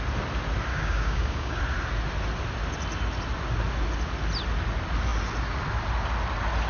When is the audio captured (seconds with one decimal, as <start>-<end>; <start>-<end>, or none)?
0.0-0.7; 1.6-6.7